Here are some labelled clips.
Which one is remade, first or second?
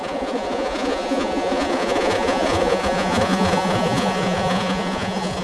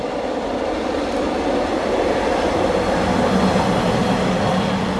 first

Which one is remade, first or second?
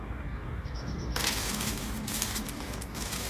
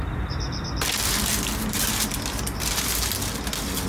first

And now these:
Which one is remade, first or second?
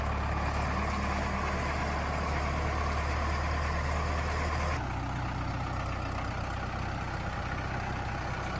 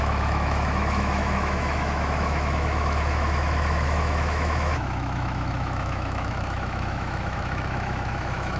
second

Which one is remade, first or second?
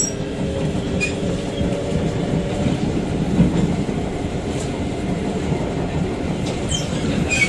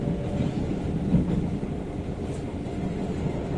first